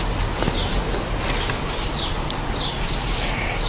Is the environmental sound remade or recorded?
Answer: recorded